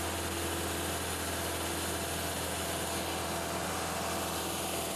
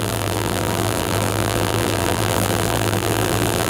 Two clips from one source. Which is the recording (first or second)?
first